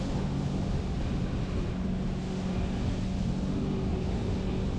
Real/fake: real